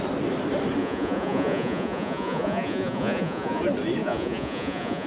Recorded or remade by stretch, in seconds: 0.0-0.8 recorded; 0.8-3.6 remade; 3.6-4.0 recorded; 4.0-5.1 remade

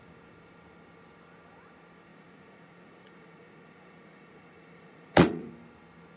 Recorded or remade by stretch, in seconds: 0.0-2.1 recorded; 2.1-5.5 remade; 5.5-6.2 recorded

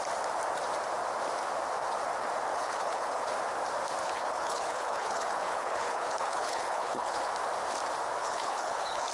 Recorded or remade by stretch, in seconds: 0.0-2.5 recorded; 2.5-3.2 remade; 3.2-4.0 recorded; 4.0-7.3 remade; 7.3-8.2 recorded; 8.2-9.1 remade

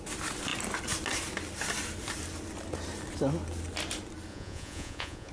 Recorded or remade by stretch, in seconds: 0.0-4.3 recorded; 4.3-5.3 remade

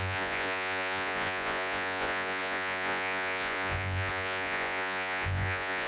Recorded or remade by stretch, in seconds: 0.0-5.9 remade

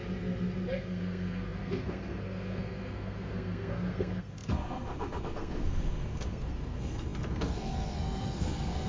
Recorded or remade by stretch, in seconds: 0.0-0.7 recorded; 0.7-8.9 remade